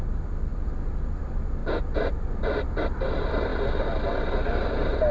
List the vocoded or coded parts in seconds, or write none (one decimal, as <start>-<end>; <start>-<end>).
0.0-1.6; 2.4-3.5; 4.4-5.1